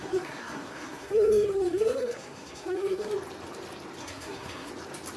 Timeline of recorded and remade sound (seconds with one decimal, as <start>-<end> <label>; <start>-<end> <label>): 0.0-3.1 remade; 3.1-4.0 recorded; 4.0-4.7 remade; 4.7-5.2 recorded